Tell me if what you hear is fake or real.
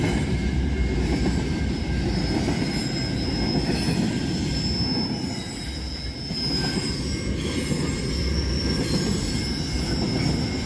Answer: real